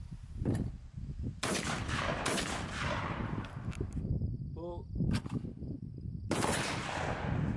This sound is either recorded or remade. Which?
recorded